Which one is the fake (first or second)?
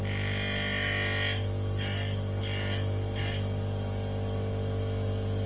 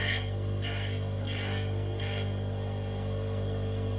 second